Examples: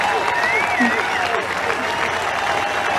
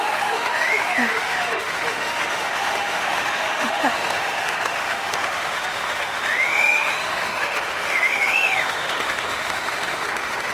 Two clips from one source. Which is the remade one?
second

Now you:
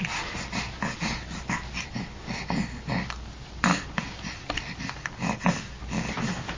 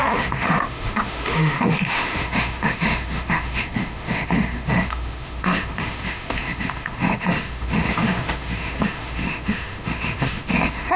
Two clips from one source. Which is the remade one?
second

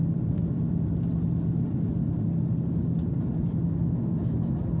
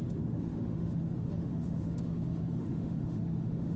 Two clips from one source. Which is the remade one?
second